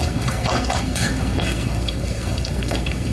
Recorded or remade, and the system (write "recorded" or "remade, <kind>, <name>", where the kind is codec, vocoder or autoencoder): remade, codec, SNAC